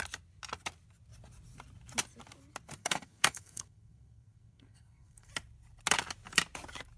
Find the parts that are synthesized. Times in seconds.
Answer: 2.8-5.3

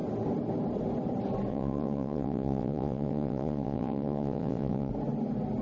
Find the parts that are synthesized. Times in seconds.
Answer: 1.5-4.9

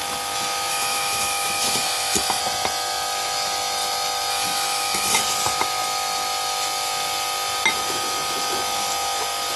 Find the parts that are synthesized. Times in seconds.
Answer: 0.7-2.4; 4.3-5.2

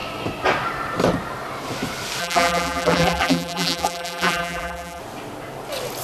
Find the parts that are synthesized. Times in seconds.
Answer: 2.2-5.0